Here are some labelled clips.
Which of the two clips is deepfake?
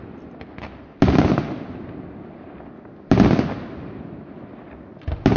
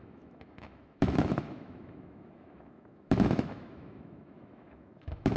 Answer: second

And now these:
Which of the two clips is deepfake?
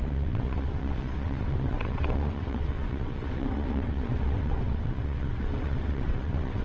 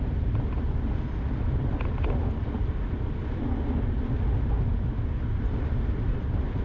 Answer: first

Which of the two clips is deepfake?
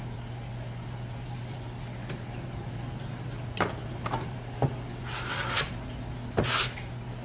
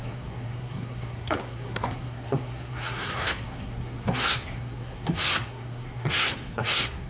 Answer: second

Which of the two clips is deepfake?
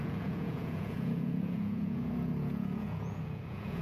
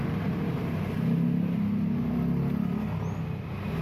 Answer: first